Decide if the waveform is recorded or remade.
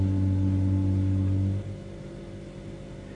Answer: recorded